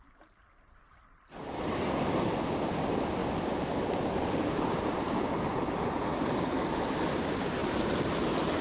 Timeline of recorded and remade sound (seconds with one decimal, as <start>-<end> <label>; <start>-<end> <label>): 0.0-8.6 recorded